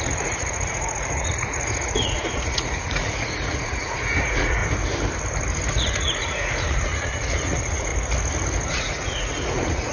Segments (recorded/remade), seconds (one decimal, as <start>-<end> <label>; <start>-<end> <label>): 0.0-4.6 remade; 4.6-5.7 recorded; 5.7-7.9 remade; 7.9-8.7 recorded; 8.7-9.9 remade